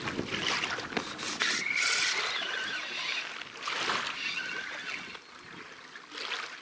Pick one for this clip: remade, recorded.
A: recorded